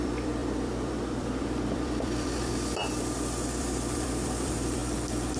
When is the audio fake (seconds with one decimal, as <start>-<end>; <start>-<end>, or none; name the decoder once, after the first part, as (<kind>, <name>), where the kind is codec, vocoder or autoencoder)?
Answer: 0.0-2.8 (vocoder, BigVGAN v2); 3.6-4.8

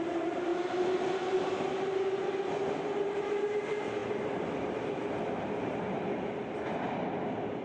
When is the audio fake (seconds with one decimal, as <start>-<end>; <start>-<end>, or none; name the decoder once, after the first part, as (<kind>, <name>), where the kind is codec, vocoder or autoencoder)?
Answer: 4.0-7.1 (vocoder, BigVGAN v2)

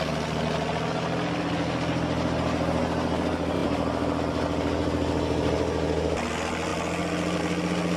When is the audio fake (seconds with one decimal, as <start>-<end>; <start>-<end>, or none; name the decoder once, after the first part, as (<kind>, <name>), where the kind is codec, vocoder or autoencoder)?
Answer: none

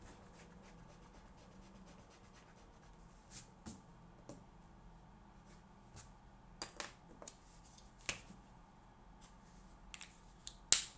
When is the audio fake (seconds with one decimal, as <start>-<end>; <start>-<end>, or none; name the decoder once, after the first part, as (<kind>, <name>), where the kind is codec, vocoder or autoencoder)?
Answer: none

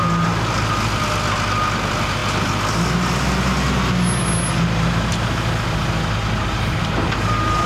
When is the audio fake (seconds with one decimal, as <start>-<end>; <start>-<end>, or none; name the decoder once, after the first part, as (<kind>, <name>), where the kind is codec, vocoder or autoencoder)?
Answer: none